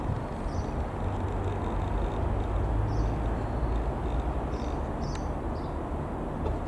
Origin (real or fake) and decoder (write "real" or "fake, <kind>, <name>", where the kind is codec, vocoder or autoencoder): real